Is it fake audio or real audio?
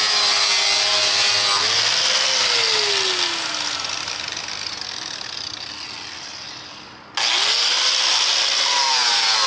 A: real